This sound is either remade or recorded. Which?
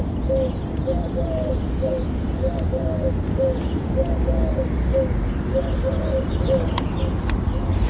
recorded